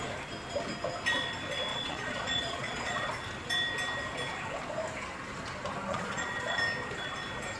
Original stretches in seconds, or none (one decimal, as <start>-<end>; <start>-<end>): 0.0-1.7; 3.1-5.9; 6.6-7.6